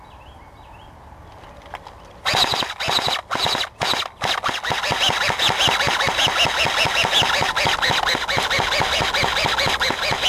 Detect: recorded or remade recorded